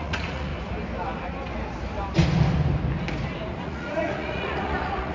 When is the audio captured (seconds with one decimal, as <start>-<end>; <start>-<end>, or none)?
0.5-3.6